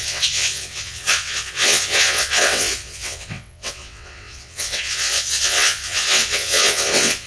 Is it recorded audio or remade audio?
remade